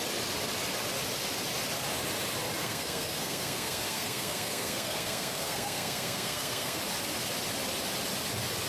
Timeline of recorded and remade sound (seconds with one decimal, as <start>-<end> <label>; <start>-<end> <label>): 0.0-2.6 recorded; 2.6-6.8 remade; 6.8-8.7 recorded